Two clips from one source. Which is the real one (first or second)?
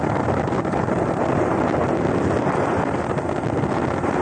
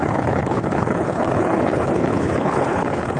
first